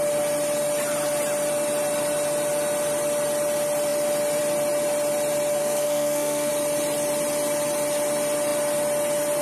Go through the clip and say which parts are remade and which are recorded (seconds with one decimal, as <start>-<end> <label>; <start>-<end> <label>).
0.0-5.6 recorded; 5.6-6.5 remade; 6.5-9.4 recorded